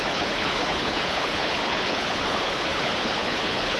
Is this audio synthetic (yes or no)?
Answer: yes